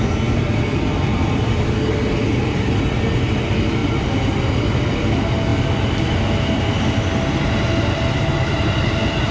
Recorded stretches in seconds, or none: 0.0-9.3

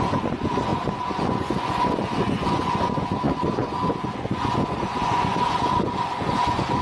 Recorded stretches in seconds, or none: none

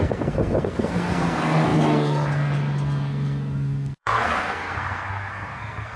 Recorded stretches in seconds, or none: none

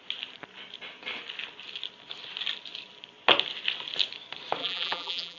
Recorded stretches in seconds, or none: 0.0-4.6

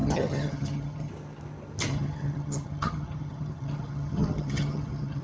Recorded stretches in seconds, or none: 1.1-1.9

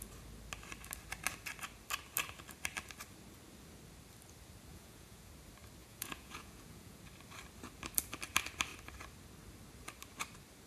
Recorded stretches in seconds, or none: 0.0-4.7; 5.3-5.8; 7.0-10.7

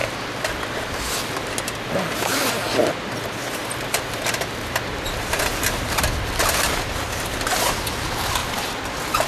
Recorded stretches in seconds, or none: 0.0-3.6; 5.4-8.4

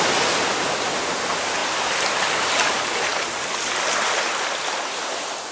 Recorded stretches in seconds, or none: 0.0-1.6; 4.8-5.5